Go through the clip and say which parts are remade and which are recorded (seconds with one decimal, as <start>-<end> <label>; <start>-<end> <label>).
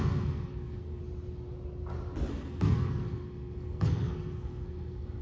0.0-1.0 remade; 1.0-2.3 recorded; 2.3-5.2 remade